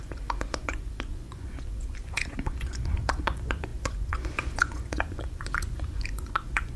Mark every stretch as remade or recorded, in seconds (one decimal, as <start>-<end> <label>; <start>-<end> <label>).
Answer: 0.0-6.8 remade